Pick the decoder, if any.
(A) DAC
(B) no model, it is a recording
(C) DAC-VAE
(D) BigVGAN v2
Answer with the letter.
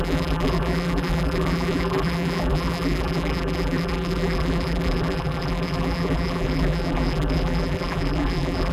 D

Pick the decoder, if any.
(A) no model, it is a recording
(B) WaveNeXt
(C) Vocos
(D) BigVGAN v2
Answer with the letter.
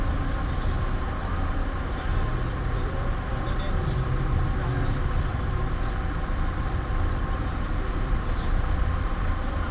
D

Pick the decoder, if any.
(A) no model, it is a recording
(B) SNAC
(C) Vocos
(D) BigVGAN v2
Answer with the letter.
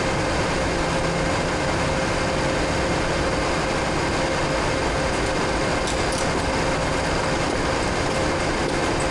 A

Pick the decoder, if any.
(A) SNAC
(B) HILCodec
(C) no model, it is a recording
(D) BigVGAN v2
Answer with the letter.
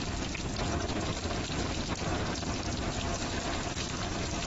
C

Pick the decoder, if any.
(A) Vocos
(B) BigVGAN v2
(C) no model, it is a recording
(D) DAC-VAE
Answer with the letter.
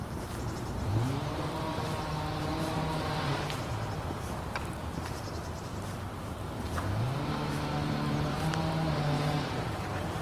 B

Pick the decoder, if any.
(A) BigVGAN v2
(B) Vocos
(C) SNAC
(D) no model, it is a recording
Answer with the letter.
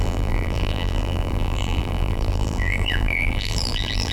A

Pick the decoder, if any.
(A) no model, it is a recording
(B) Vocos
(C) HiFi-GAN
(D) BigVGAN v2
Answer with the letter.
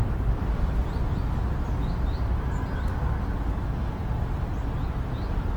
A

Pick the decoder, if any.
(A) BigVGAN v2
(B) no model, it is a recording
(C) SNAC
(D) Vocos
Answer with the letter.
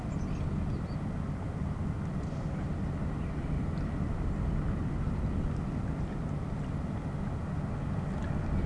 B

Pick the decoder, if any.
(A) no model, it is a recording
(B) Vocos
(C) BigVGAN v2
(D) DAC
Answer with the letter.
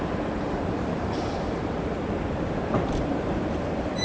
C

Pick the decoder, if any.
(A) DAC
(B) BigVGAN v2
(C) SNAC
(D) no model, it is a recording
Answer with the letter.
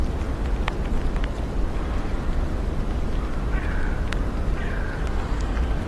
D